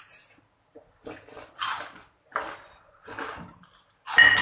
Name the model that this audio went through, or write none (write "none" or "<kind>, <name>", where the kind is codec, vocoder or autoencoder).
none